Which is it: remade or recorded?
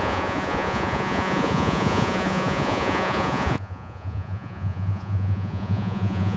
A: remade